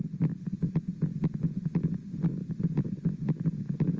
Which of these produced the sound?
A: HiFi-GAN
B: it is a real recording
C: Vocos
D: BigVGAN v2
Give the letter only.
B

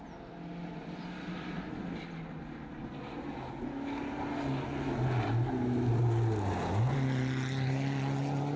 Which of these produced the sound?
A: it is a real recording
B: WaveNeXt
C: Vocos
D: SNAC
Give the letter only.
A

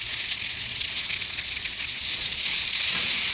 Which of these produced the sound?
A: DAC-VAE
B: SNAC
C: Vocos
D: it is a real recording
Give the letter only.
C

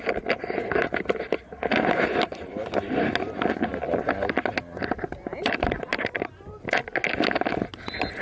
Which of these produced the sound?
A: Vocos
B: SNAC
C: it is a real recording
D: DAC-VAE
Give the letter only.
C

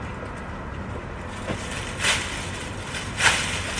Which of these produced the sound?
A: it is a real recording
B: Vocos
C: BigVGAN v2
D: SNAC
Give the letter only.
A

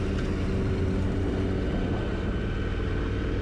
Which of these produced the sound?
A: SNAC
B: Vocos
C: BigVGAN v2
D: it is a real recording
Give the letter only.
D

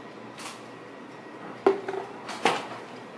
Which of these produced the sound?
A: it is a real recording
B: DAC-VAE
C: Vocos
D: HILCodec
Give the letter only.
A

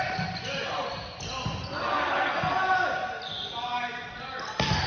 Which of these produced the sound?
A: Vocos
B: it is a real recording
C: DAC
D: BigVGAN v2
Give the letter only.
B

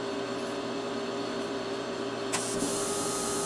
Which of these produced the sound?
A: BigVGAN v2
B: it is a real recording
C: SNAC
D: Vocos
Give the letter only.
B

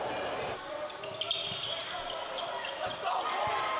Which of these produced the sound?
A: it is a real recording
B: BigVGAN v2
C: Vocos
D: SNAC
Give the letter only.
A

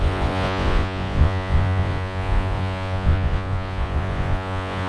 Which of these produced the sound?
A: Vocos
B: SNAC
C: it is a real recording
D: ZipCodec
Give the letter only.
A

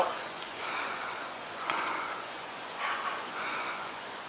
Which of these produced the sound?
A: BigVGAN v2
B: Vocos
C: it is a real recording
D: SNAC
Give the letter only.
B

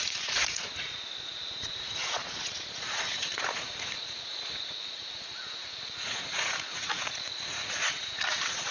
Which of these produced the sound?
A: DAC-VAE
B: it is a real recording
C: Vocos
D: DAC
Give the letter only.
C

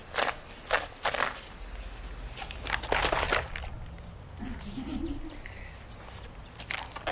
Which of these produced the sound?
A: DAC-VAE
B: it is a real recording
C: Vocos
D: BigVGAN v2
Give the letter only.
B